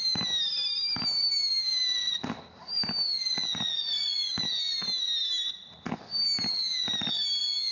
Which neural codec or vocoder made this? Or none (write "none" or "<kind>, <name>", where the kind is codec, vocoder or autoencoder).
none